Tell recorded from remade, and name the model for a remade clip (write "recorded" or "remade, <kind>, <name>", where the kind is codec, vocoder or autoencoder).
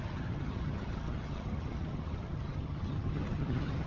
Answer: remade, vocoder, HiFi-GAN